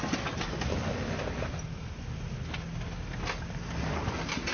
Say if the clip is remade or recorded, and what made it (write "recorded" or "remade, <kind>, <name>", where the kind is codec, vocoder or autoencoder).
recorded